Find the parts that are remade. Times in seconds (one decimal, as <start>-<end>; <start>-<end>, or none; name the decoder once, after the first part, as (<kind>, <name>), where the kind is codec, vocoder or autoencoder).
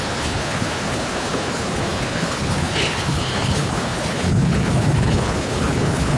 0.0-6.2 (codec, HILCodec)